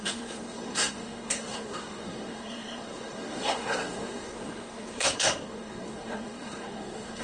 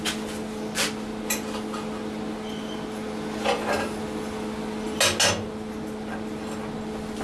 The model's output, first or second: first